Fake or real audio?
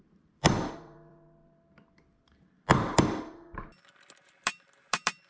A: fake